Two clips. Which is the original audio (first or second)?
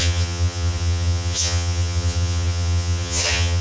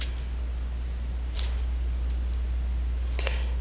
second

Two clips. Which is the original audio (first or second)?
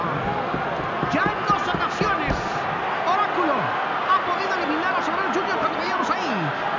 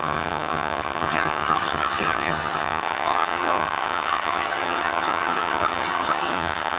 first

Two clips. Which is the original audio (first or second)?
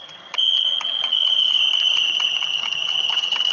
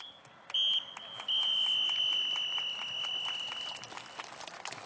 second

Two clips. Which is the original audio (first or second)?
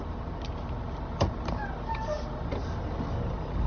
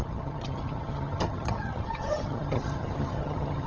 first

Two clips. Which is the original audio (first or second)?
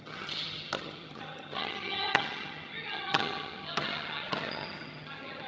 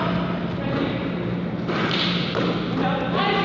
second